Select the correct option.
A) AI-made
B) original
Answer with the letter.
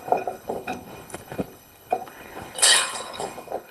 A